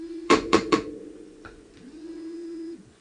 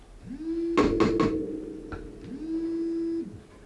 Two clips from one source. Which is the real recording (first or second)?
second